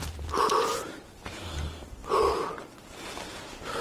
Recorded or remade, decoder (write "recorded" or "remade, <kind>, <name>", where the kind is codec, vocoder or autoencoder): recorded